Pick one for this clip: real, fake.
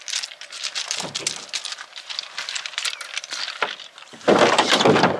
real